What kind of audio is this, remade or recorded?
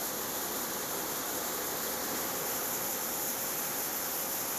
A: recorded